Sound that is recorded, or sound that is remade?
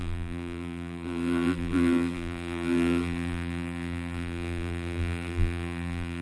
remade